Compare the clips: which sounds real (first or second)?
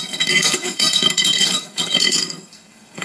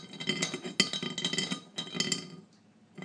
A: second